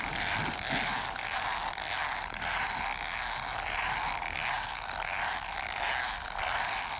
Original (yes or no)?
yes